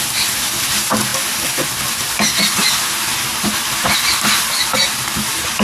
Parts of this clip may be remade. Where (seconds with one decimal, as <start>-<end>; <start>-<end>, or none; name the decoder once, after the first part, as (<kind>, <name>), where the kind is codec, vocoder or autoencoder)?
none